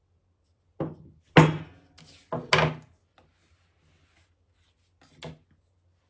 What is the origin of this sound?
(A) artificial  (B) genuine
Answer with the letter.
B